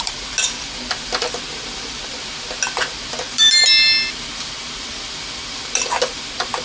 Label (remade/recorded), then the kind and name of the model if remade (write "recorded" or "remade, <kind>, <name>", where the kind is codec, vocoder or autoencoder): remade, vocoder, BigVGAN v2